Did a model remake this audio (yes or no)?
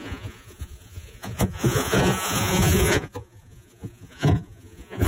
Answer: yes